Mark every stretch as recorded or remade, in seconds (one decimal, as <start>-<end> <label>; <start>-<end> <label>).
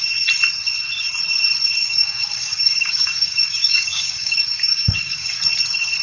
0.0-1.8 recorded; 1.8-5.4 remade; 5.4-6.0 recorded